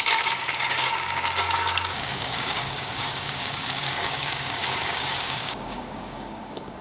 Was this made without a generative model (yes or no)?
no